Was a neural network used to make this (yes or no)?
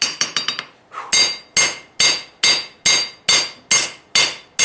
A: no